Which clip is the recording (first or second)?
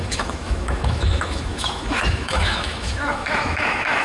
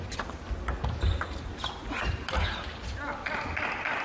second